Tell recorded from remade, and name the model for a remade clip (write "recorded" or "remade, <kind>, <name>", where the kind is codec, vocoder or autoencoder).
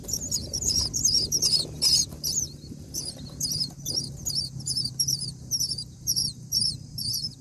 remade, vocoder, BigVGAN v2